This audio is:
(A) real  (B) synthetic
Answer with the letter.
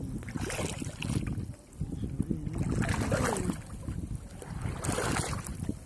A